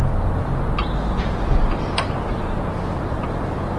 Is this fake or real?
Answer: real